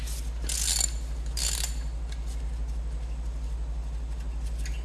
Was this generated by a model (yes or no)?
no